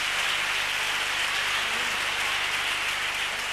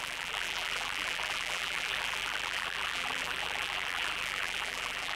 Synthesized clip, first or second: second